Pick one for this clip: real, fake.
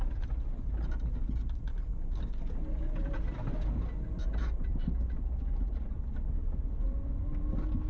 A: real